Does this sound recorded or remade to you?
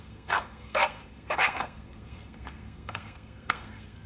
remade